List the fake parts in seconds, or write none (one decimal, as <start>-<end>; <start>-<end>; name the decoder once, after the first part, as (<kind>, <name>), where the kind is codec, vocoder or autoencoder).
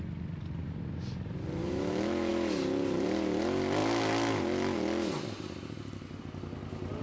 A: 1.6-2.3 (autoencoder, DAC-VAE)